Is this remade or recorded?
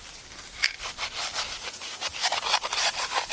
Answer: recorded